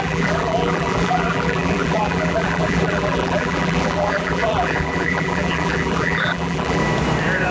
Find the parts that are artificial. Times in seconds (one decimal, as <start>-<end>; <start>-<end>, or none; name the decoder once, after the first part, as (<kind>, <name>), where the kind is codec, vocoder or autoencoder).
0.0-6.8 (vocoder, BigVGAN v2)